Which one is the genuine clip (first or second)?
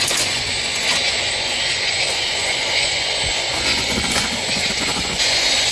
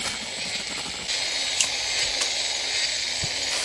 second